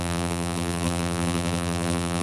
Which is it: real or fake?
fake